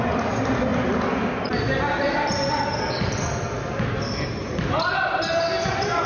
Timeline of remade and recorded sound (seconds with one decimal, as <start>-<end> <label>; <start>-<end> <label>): 0.0-6.1 recorded